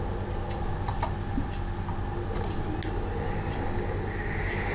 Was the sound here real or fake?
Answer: real